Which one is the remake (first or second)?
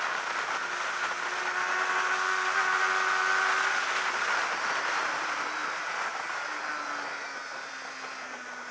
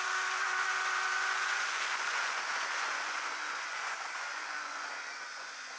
second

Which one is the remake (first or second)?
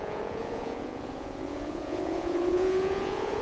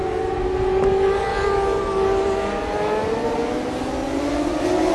first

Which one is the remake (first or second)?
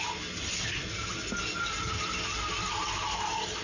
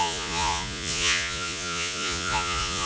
second